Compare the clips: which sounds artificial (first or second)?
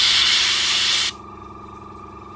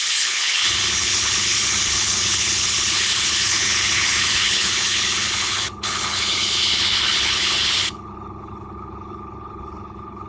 second